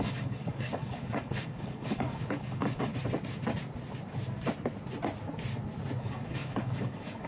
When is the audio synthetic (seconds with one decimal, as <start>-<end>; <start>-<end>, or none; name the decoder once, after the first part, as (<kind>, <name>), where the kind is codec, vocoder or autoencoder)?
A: 0.0-2.9 (codec, DAC); 6.0-7.3